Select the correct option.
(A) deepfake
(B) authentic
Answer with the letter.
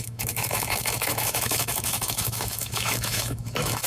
A